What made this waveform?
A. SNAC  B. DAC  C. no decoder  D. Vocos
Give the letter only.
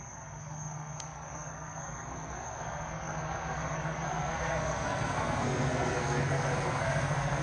A